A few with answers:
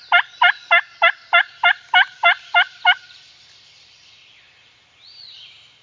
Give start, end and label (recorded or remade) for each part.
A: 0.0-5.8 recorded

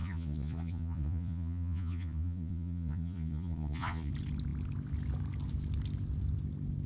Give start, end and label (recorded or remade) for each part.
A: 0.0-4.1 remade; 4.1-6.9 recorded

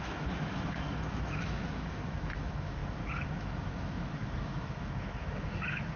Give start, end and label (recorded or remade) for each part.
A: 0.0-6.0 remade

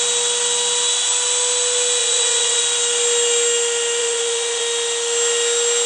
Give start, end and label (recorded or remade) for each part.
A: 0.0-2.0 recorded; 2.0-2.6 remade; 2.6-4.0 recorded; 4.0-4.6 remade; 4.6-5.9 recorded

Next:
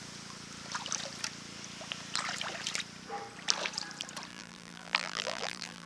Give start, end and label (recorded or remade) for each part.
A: 0.0-4.3 recorded; 4.3-5.9 remade

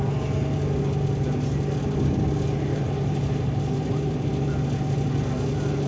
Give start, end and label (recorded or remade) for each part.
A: 0.0-2.7 recorded; 2.7-4.3 remade; 4.3-5.9 recorded

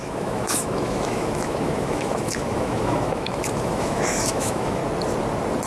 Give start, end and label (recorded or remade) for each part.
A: 0.0-4.8 remade; 4.8-5.7 recorded